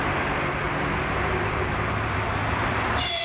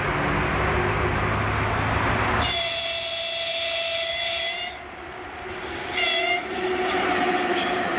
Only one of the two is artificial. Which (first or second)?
first